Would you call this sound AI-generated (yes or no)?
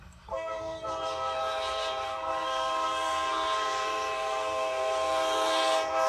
yes